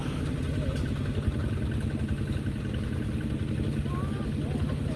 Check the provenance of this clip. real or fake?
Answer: real